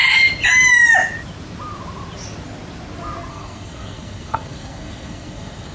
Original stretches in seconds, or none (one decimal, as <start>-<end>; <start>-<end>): 0.0-3.3